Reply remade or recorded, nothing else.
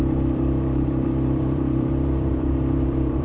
remade